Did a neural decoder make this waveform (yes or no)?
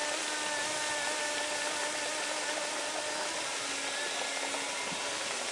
no